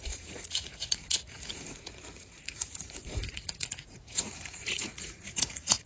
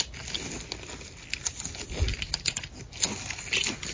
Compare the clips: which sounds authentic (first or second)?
second